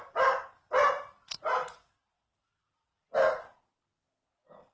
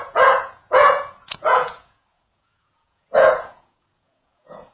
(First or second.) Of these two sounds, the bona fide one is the first